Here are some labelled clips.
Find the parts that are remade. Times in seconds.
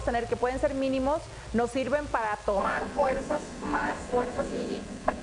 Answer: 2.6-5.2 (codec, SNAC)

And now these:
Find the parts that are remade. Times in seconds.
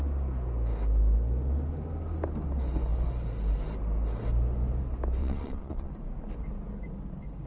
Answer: 5.2-5.9 (vocoder, Vocos)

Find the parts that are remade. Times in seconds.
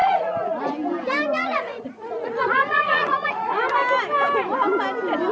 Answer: 0.0-0.6 (vocoder, Vocos); 1.3-3.6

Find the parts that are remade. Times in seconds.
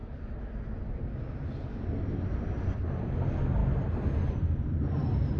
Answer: none